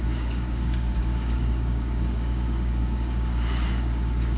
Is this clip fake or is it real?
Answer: fake